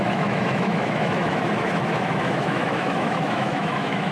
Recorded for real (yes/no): no